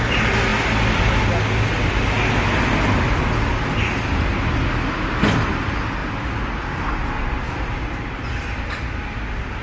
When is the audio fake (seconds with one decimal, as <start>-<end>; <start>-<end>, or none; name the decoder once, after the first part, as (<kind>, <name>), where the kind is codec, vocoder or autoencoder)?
none